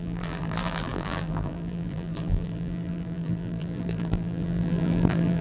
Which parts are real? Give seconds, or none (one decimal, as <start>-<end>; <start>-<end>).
none

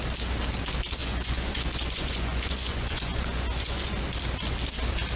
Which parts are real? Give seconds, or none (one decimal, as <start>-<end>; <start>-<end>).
0.0-1.0; 4.0-5.2